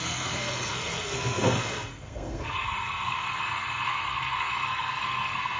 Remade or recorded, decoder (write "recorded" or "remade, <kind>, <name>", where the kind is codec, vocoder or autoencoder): remade, codec, SNAC